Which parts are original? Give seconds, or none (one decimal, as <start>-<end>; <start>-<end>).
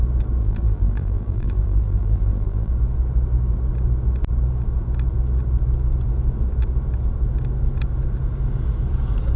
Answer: 0.0-0.4; 2.7-9.4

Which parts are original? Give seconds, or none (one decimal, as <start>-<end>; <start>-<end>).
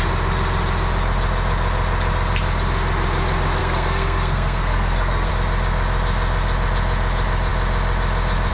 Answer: 0.0-3.6; 5.3-8.5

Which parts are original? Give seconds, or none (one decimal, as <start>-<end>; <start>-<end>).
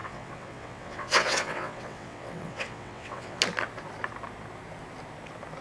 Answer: 3.4-5.6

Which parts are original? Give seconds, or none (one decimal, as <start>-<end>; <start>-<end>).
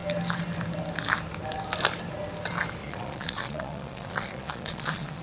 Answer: 0.0-2.8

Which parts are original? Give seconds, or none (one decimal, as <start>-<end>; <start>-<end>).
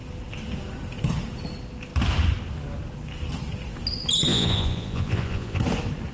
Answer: 0.0-4.3; 5.6-6.1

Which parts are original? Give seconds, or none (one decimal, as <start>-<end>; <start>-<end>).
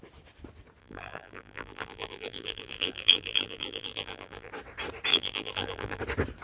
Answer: 0.0-0.8; 4.5-5.1; 6.0-6.4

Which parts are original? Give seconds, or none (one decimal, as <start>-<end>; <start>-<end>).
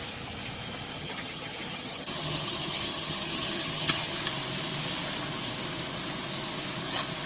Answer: 0.0-0.9; 4.2-7.3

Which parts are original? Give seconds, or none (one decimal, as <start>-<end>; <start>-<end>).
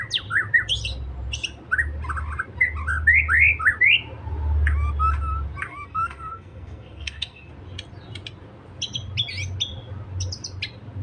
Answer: 0.0-5.7; 7.5-11.0